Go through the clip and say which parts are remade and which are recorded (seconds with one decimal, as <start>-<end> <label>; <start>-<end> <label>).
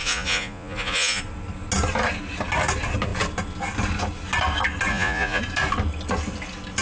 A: 0.0-1.2 remade; 1.2-4.9 recorded; 4.9-5.4 remade; 5.4-6.8 recorded